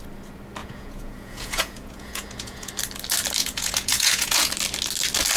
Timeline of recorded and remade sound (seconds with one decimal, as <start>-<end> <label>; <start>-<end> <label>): 0.0-0.6 recorded; 0.6-2.7 remade; 2.7-3.4 recorded; 3.4-4.5 remade; 4.5-5.4 recorded